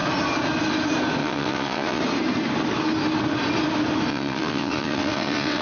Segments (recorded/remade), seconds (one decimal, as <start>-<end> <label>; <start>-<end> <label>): 0.0-1.2 recorded; 1.2-2.0 remade; 2.0-4.1 recorded; 4.1-5.6 remade